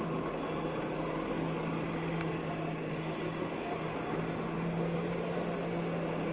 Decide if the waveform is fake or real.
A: real